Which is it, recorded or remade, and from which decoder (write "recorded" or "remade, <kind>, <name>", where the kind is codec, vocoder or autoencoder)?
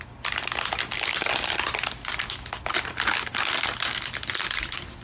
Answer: recorded